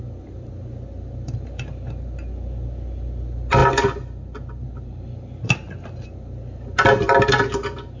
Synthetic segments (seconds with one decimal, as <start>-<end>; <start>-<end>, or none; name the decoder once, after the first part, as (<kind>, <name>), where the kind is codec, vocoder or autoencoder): none